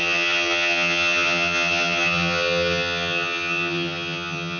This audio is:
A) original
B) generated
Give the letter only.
B